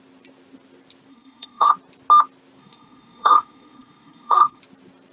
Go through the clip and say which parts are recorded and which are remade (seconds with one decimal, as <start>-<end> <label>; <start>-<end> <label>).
0.0-1.1 recorded; 1.1-1.7 remade; 1.7-2.6 recorded; 2.6-4.6 remade; 4.6-5.1 recorded